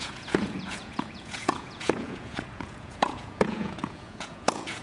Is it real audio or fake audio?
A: fake